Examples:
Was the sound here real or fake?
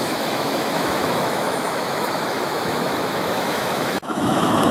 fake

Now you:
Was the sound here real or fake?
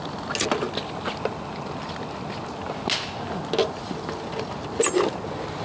real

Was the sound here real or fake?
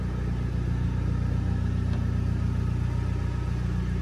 real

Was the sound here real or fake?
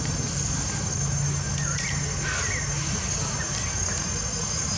real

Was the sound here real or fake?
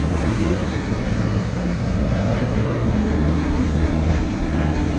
fake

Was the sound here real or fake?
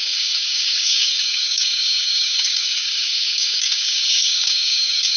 fake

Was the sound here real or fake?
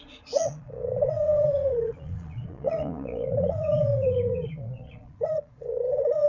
fake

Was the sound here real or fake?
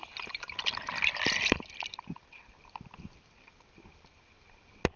real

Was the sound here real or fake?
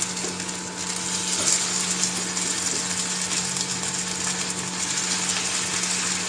real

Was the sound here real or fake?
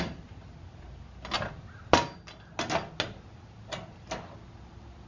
real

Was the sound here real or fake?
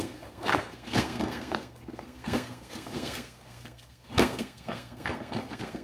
fake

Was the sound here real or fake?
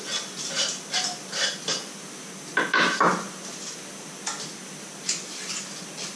real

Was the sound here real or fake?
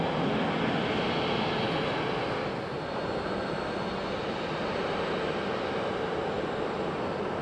real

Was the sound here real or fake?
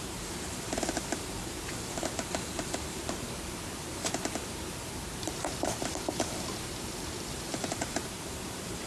fake